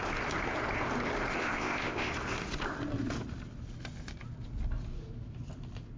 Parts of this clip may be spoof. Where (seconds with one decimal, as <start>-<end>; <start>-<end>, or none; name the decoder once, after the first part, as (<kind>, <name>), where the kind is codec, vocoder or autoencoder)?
1.4-2.1 (codec, ZipCodec)